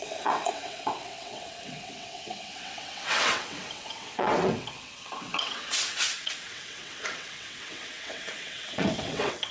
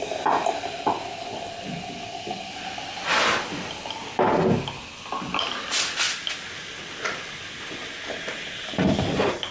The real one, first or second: second